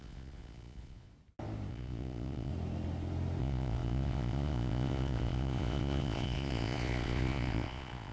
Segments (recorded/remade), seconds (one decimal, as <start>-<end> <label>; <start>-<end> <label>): 0.0-1.1 remade; 1.1-1.7 recorded; 1.7-2.5 remade; 2.5-3.4 recorded; 3.4-8.1 remade